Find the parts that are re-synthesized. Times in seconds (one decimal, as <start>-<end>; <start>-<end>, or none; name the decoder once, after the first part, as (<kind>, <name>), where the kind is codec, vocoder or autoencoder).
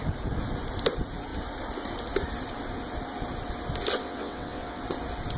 4.0-4.8 (vocoder, WaveNeXt)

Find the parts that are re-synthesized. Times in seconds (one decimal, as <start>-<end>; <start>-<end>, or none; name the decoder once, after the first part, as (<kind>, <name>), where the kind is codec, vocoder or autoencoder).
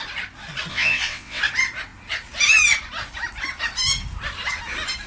0.7-1.4 (vocoder, WaveNeXt)